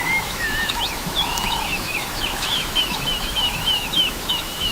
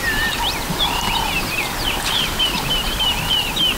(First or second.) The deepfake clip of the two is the first